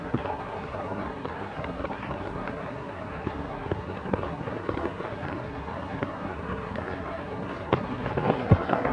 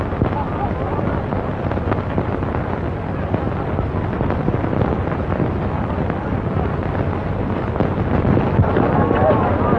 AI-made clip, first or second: first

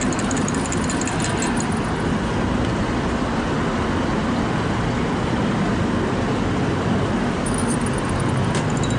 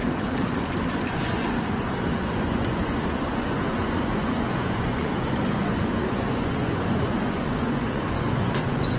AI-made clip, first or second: second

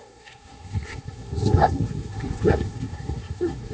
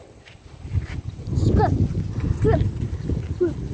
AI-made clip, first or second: first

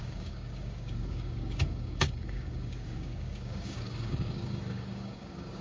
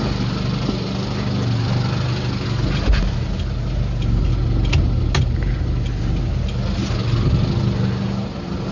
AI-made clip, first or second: first